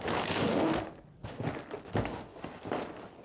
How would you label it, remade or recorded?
recorded